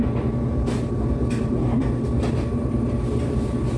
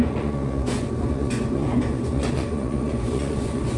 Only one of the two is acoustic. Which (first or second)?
first